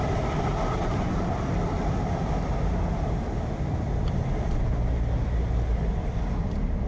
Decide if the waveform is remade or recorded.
recorded